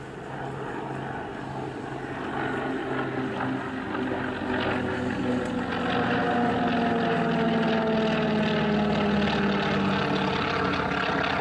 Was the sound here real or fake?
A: real